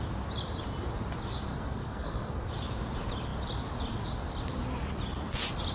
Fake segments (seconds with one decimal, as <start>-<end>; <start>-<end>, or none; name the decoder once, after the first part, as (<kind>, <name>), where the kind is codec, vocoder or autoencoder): 1.5-2.5 (codec, SNAC)